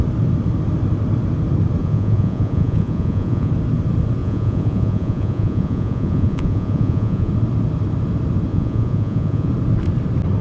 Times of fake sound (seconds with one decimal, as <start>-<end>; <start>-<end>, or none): 1.8-3.5; 4.2-7.3; 8.5-9.5